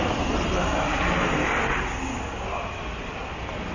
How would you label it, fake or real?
real